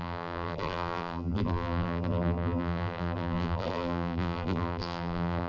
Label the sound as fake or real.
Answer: fake